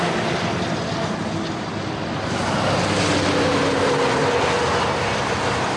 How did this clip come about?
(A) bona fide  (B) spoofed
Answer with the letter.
A